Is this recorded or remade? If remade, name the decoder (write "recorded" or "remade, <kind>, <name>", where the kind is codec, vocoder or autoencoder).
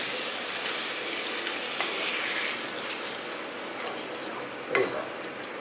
recorded